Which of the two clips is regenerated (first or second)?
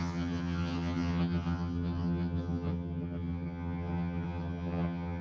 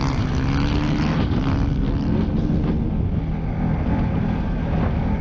first